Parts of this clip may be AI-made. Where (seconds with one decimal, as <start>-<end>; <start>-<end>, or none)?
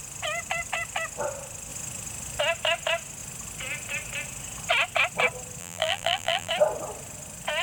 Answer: 5.6-6.5